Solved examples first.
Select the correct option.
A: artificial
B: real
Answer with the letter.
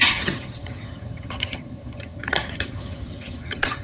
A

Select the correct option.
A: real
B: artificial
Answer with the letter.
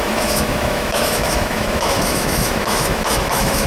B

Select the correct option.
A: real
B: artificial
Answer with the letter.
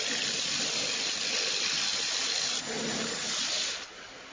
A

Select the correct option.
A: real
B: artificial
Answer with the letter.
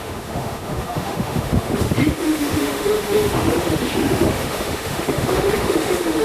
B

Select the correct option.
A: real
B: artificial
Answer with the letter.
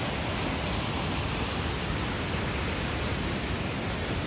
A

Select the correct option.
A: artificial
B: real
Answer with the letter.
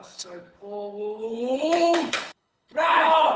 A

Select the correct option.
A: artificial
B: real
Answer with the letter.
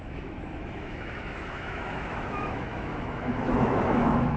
A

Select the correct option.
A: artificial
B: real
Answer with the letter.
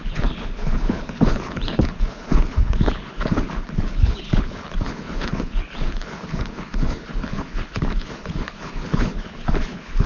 A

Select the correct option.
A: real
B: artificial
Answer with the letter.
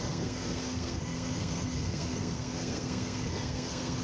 B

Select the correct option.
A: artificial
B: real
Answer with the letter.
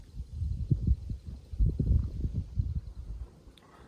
B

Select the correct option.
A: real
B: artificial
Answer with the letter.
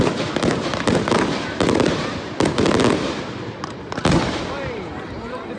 A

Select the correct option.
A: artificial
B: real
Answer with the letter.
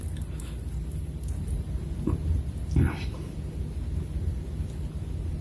B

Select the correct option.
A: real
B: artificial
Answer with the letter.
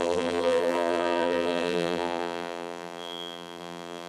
B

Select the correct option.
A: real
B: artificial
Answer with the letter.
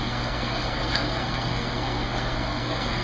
B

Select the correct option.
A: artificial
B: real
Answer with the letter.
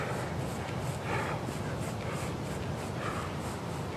B